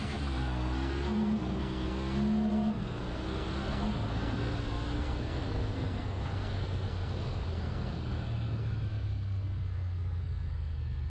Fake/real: fake